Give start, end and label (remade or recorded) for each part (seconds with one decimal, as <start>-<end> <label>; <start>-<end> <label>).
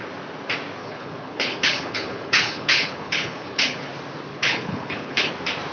0.0-0.8 recorded; 0.8-3.9 remade; 3.9-4.3 recorded; 4.3-5.3 remade; 5.3-5.7 recorded